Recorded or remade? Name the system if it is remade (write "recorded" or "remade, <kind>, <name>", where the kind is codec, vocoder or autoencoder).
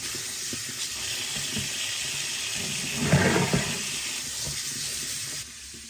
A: recorded